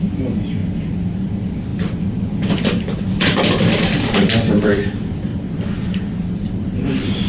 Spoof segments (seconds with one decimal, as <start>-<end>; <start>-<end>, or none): 0.0-5.3; 5.9-7.3